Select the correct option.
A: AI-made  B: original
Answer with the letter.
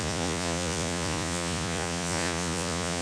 A